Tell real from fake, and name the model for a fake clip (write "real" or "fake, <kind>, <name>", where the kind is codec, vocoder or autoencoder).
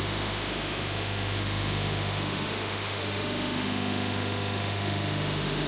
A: fake, autoencoder, DAC-VAE